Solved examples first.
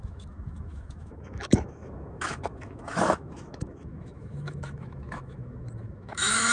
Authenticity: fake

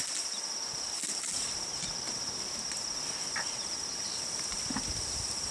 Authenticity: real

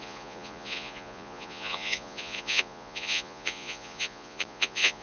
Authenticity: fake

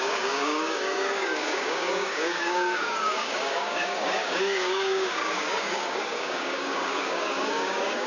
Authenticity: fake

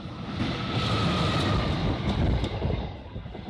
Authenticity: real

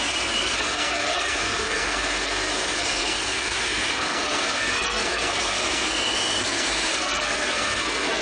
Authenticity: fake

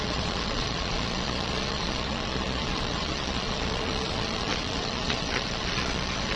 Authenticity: fake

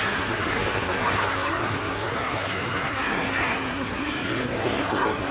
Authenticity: fake